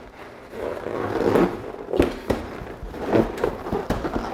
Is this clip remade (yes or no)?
yes